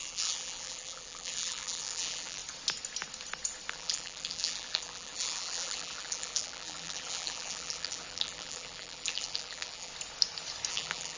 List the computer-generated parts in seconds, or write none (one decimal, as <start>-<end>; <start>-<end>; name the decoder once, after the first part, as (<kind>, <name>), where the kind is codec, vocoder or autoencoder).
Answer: 0.0-2.4 (vocoder, BigVGAN v2); 3.7-9.9; 10.7-11.2